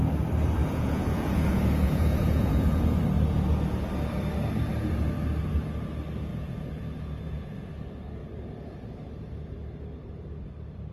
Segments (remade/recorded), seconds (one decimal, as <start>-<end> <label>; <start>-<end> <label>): 0.0-0.6 recorded; 0.6-3.0 remade; 3.0-6.3 recorded; 6.3-7.7 remade; 7.7-10.9 recorded